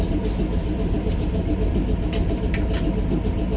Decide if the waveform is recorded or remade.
recorded